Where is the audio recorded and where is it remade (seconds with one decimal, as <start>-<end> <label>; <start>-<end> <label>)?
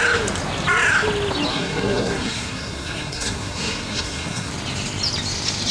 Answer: 0.0-1.5 recorded; 1.5-4.5 remade; 4.5-5.7 recorded